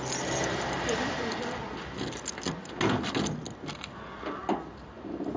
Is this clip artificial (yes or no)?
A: no